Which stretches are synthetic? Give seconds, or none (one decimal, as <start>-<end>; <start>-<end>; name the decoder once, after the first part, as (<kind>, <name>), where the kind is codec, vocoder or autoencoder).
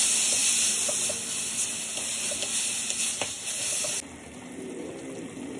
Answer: 0.4-1.0 (vocoder, BigVGAN v2)